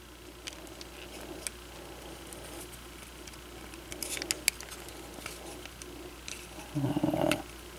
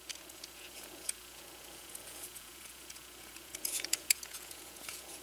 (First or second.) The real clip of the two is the first